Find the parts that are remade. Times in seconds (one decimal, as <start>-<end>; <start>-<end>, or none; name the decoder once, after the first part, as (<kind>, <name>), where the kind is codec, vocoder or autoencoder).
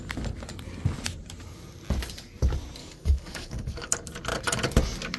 2.8-3.9 (codec, DAC)